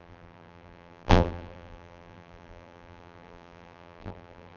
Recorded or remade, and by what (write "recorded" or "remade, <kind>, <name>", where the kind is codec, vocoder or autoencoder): remade, vocoder, BigVGAN v2